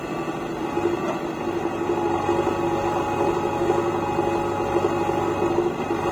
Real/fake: real